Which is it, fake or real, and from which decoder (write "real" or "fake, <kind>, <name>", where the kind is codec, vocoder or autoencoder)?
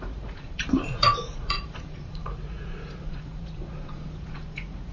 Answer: fake, vocoder, Vocos